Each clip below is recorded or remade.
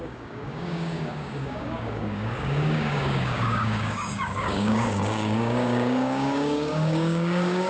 remade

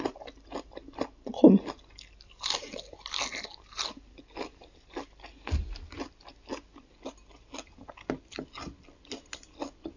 recorded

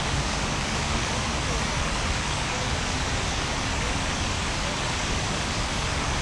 remade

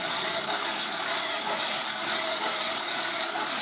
remade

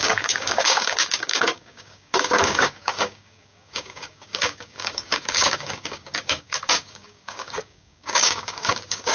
remade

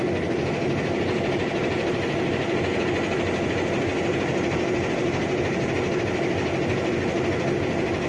recorded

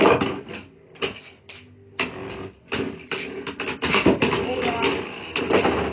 recorded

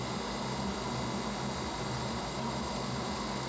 recorded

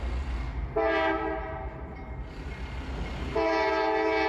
recorded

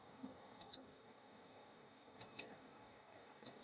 remade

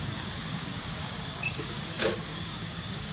remade